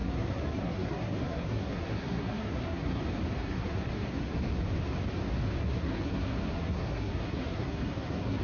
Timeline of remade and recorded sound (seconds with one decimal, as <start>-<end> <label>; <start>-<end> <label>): 0.0-3.0 remade; 3.0-3.4 recorded; 3.4-4.6 remade; 4.6-5.6 recorded; 5.6-8.4 remade